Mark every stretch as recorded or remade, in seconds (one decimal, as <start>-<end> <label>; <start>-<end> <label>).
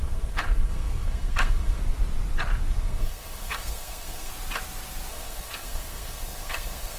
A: 0.0-1.8 remade; 1.8-2.7 recorded; 2.7-4.3 remade; 4.3-5.1 recorded; 5.1-7.0 remade